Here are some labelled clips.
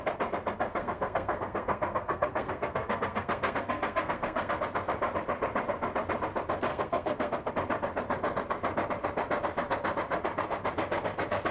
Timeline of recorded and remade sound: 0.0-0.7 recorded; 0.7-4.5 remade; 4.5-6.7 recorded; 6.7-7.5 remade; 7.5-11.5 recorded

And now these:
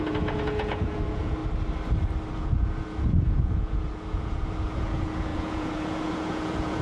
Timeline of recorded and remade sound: 0.0-1.4 remade; 1.4-2.3 recorded; 2.3-6.8 remade